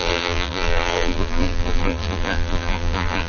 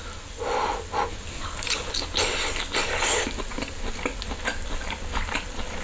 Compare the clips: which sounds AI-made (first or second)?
first